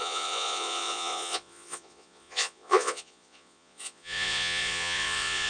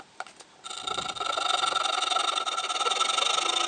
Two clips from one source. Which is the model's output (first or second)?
first